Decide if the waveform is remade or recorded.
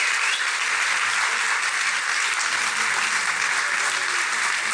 recorded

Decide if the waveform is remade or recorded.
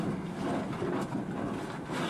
recorded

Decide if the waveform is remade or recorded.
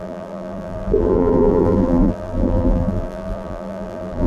remade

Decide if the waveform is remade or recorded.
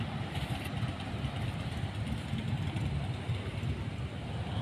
recorded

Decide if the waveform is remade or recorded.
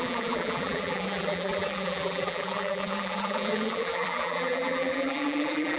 remade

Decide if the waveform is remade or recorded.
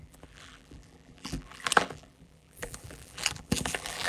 remade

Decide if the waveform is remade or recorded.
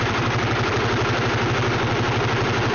remade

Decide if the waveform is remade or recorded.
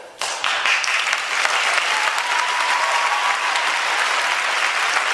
recorded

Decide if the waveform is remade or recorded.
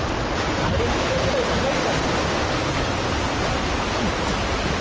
recorded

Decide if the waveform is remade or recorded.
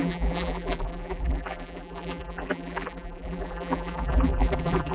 remade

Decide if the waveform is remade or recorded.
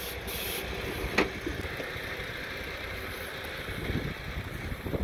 recorded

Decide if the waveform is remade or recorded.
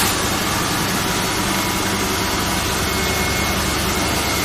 recorded